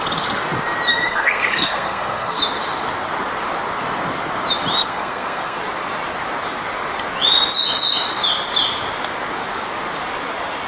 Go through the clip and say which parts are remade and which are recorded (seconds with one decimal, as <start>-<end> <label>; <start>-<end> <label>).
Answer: 0.0-0.9 recorded; 0.9-2.4 remade; 2.4-4.8 recorded; 4.8-5.6 remade; 5.6-10.7 recorded